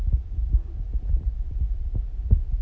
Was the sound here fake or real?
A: real